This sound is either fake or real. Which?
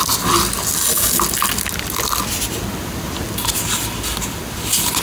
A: real